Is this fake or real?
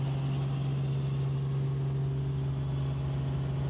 real